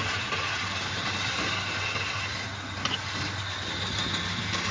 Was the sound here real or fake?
real